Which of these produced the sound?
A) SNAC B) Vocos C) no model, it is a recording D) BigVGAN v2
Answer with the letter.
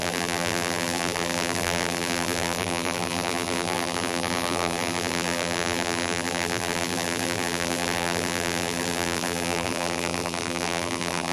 D